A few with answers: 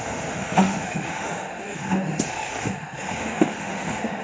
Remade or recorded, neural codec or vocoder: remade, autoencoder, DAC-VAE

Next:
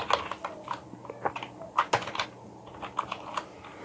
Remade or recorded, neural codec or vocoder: recorded